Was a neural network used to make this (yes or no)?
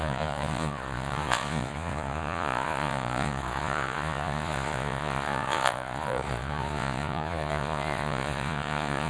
yes